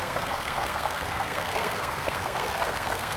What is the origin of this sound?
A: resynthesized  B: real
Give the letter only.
A